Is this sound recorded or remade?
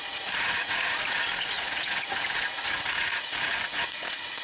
remade